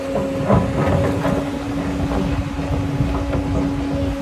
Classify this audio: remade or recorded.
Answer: recorded